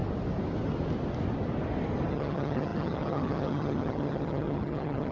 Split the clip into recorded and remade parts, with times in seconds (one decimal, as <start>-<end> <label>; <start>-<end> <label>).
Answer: 0.0-2.1 recorded; 2.1-5.1 remade